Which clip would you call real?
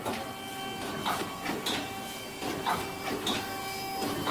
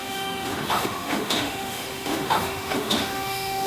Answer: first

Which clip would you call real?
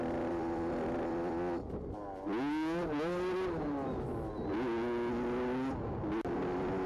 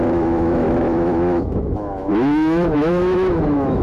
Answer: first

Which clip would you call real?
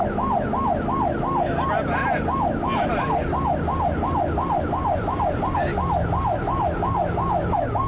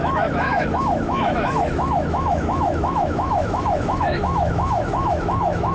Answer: first